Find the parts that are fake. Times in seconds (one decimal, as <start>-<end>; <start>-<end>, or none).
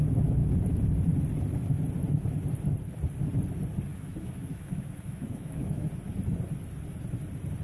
3.9-5.9